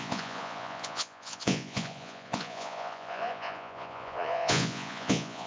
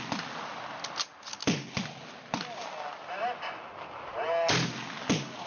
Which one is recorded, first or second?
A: second